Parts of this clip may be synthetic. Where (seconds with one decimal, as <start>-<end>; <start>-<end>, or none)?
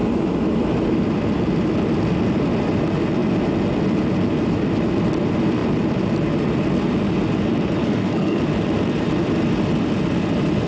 7.8-8.4